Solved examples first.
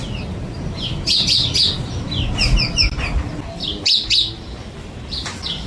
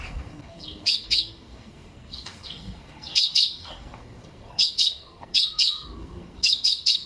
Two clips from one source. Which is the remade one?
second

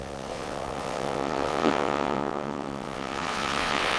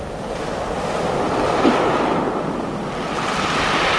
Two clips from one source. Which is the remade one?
first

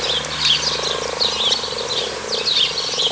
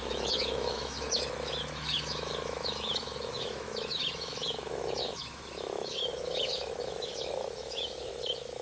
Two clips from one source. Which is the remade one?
second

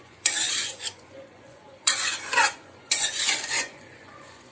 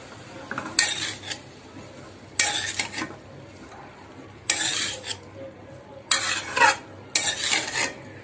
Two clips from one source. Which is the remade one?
first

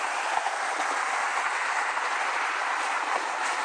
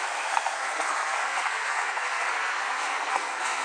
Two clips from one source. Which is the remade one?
second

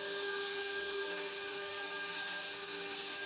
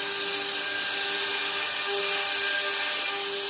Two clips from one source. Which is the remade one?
first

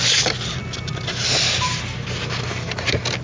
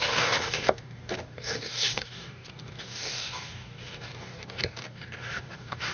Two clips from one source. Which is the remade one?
second